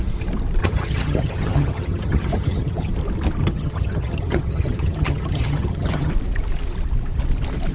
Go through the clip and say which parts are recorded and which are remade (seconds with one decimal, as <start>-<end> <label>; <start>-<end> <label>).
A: 0.0-0.6 recorded; 0.6-2.9 remade; 2.9-3.4 recorded; 3.4-6.1 remade; 6.1-7.7 recorded